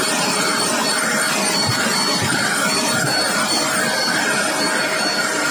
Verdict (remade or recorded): recorded